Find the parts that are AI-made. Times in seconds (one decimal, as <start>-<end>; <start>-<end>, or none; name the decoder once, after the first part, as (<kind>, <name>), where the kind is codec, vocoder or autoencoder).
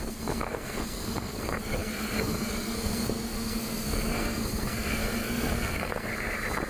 0.0-6.1 (codec, SNAC)